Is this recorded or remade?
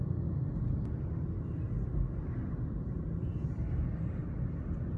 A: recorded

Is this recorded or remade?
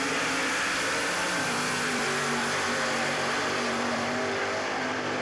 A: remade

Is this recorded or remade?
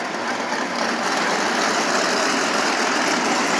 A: recorded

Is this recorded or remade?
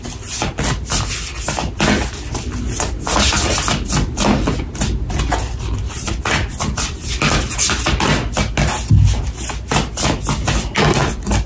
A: recorded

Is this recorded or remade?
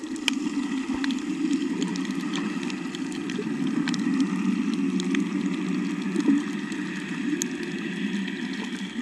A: recorded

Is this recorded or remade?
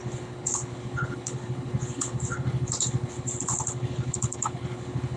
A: remade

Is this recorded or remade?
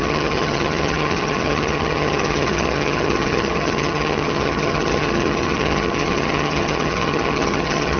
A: remade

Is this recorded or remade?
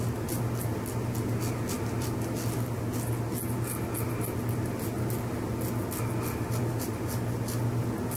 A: recorded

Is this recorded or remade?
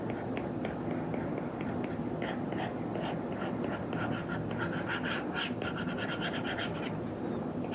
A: recorded